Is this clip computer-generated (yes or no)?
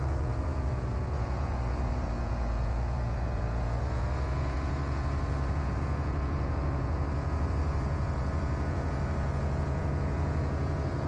yes